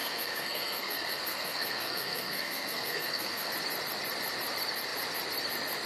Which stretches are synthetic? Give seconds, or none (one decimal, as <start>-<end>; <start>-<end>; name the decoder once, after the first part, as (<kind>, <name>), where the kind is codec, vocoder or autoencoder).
0.0-3.5 (codec, SNAC)